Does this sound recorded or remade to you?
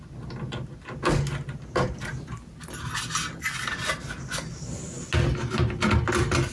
recorded